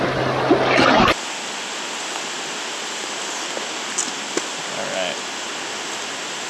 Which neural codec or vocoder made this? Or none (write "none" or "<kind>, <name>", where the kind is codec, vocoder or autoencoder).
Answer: none